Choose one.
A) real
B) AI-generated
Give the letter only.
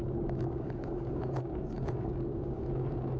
B